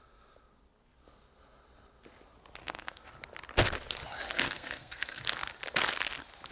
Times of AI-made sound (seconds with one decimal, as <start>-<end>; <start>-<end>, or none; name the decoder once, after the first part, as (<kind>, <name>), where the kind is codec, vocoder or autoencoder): 2.6-3.1 (codec, SNAC); 4.3-5.2